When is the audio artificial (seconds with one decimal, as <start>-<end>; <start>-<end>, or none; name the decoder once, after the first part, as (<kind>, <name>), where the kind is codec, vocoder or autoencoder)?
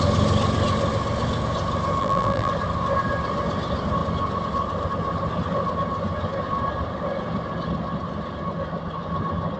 2.0-2.5 (vocoder, BigVGAN v2)